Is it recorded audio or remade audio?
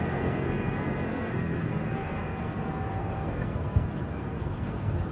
remade